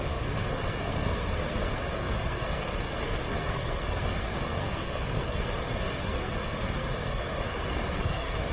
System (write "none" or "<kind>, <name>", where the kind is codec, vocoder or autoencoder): codec, SNAC